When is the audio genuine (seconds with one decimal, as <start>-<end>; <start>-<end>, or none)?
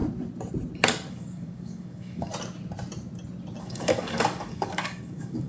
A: 0.0-1.1; 2.3-3.6